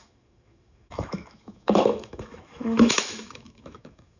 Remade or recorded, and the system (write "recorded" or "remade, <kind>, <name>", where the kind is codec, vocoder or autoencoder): remade, autoencoder, DAC-VAE